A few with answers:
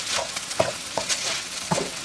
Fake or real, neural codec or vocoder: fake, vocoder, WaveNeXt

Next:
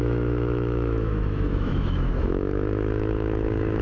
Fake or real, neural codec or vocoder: fake, autoencoder, DAC-VAE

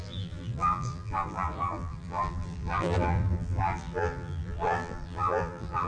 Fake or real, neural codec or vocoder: fake, vocoder, BigVGAN v2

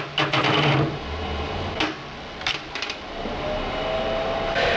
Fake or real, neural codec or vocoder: real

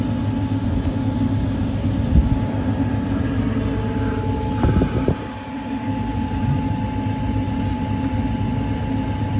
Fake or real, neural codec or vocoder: real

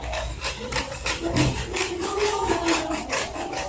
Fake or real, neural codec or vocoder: fake, codec, DAC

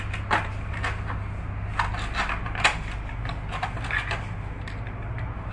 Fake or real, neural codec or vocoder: real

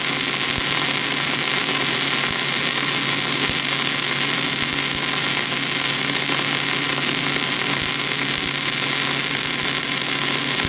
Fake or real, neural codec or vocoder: real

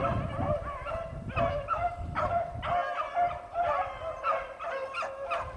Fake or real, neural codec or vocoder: real